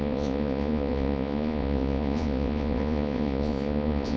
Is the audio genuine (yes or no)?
no